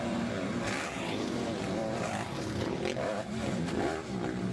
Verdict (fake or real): real